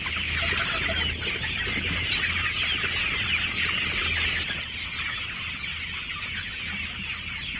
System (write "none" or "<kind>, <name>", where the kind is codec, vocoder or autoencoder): none